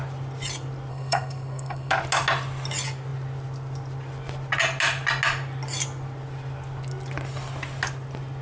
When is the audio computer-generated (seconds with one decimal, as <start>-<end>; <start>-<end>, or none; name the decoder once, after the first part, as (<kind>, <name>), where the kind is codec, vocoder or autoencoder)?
0.9-1.9 (codec, SNAC)